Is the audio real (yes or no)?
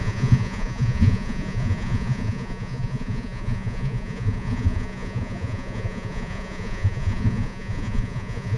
no